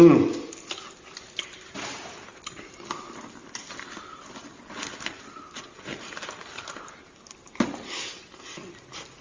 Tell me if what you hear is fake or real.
real